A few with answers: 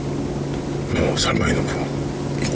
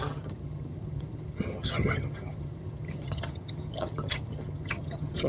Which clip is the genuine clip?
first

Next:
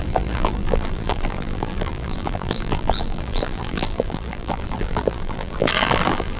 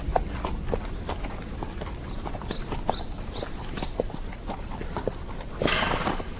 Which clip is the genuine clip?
second